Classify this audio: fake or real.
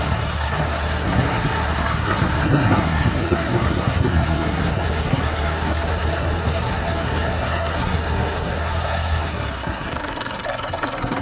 fake